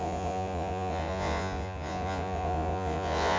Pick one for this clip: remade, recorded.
remade